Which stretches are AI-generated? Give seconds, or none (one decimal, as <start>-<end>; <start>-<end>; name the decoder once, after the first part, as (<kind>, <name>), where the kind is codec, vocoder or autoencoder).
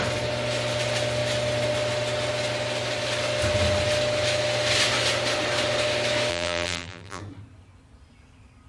6.3-7.2 (vocoder, BigVGAN v2)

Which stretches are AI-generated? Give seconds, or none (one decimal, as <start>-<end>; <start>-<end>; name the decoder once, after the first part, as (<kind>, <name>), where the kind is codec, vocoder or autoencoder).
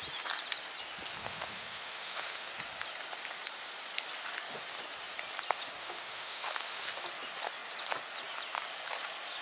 1.2-2.5 (autoencoder, DAC-VAE); 5.8-7.0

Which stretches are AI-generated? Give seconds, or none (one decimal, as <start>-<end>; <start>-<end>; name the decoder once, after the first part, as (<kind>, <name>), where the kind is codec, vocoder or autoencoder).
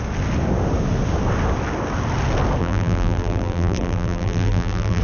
2.6-5.0 (vocoder, BigVGAN v2)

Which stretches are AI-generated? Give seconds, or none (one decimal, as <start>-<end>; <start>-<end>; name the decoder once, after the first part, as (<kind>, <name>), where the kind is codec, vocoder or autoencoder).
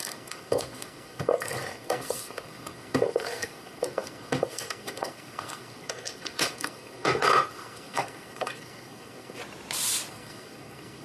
0.0-9.4 (codec, SNAC); 10.1-11.0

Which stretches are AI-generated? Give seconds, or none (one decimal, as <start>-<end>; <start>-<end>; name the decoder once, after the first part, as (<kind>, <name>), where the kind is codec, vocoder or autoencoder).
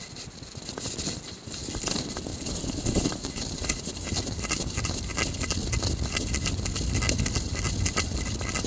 2.3-5.1 (vocoder, BigVGAN v2)